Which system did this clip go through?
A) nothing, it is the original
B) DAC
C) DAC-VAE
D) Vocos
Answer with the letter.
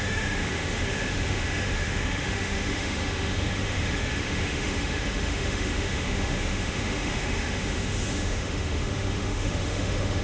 C